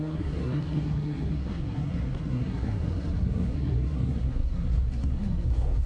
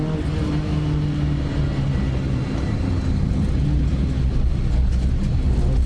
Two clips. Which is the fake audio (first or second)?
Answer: first